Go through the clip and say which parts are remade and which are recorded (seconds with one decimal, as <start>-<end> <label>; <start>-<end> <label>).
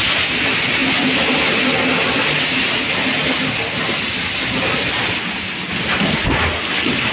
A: 0.0-7.1 recorded